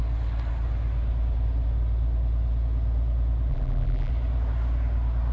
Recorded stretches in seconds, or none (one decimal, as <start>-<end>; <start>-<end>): 0.0-3.5; 4.1-5.3